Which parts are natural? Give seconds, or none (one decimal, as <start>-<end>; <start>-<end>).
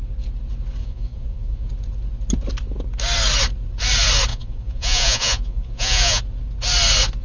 0.0-0.8; 1.7-4.3; 6.2-7.2